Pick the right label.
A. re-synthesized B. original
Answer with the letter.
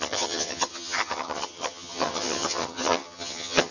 A